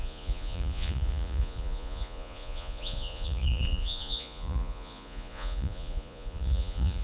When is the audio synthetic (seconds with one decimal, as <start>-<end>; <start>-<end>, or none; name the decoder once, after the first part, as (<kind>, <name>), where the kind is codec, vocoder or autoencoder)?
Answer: 0.0-7.0 (vocoder, Vocos)